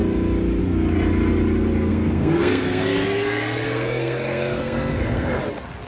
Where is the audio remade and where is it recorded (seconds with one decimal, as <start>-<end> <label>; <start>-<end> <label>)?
0.0-1.9 recorded; 1.9-5.4 remade; 5.4-5.9 recorded